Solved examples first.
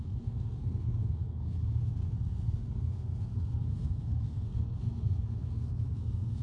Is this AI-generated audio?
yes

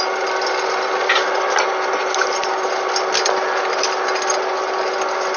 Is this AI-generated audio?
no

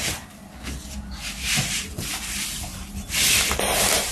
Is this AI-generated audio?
no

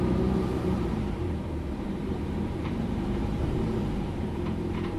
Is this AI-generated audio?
yes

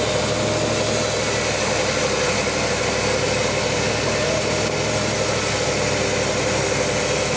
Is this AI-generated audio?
no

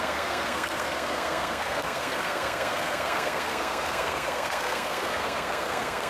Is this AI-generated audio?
yes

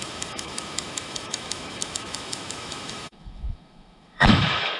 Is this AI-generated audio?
yes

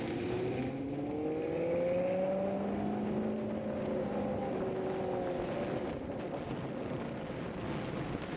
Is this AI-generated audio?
no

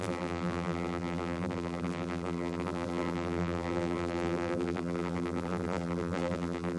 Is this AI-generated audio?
yes